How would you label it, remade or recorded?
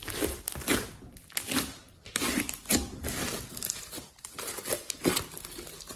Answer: recorded